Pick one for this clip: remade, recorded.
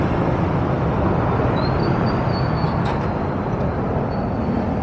recorded